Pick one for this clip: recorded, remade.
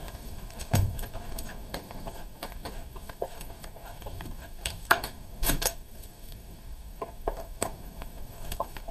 remade